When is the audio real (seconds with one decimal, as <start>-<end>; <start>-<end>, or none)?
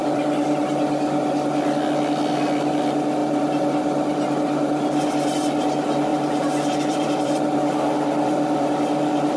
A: 0.7-6.1; 8.7-9.4